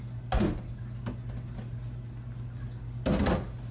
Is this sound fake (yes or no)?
no